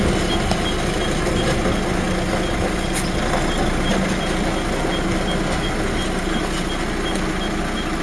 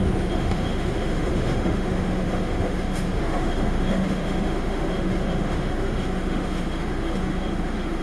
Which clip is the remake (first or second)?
second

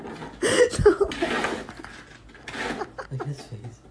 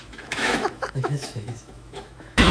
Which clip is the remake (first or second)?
second